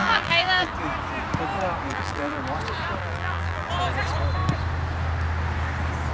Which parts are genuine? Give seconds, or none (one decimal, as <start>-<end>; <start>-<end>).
0.7-1.9; 2.4-3.0; 3.7-6.1